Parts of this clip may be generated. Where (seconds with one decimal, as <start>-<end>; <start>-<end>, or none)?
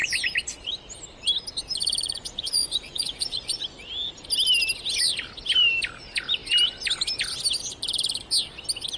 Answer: 1.8-3.6